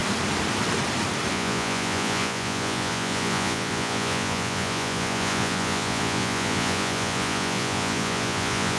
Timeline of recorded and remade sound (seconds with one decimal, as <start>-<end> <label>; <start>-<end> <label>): 0.0-1.3 recorded; 1.3-8.8 remade